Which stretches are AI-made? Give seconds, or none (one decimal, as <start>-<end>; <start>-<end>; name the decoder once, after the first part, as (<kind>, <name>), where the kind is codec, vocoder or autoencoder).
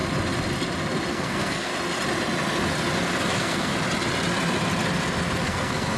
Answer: 1.1-1.7 (codec, SNAC); 3.3-3.7; 5.4-6.0